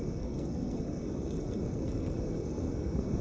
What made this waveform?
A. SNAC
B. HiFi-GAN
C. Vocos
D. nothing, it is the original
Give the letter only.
A